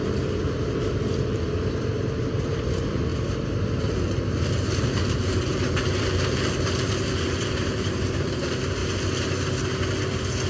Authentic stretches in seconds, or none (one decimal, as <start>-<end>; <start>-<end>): 3.1-3.8; 8.8-10.5